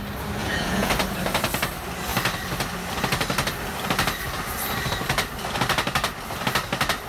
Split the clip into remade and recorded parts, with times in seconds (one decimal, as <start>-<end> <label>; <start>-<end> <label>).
0.0-0.4 recorded; 0.4-0.9 remade; 0.9-7.1 recorded